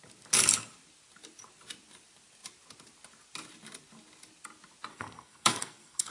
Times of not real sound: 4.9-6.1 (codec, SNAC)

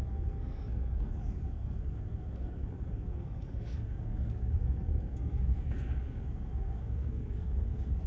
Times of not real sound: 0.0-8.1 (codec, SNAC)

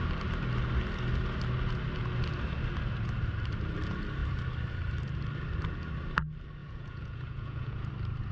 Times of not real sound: 6.6-7.9 (vocoder, Vocos)

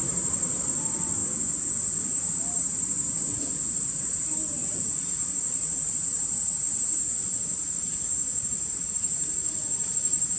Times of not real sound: 0.0-1.2 (vocoder, BigVGAN v2); 1.9-4.6; 5.3-10.4